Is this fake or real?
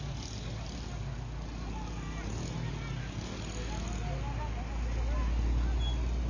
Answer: real